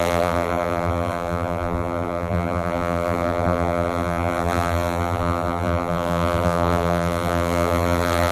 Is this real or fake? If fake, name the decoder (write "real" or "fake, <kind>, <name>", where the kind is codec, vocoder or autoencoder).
fake, vocoder, BigVGAN v2